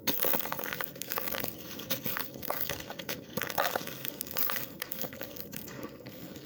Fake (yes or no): yes